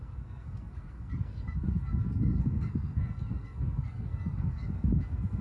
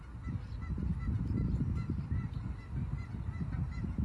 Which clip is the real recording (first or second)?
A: second